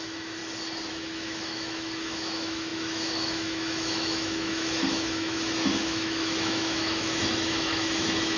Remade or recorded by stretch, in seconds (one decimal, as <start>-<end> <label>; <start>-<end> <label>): 0.0-0.4 remade; 0.4-0.9 recorded; 0.9-8.4 remade